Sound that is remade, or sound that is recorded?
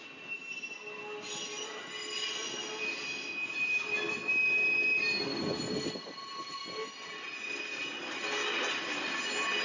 recorded